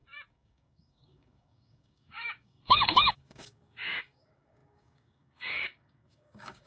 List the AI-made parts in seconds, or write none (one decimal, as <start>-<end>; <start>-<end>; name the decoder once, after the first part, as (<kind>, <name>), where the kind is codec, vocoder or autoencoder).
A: 0.0-6.7 (codec, DAC)